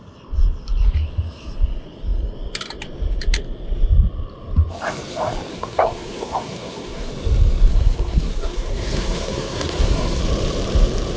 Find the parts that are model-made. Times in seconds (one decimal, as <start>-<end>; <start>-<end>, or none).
5.5-7.1; 7.7-10.2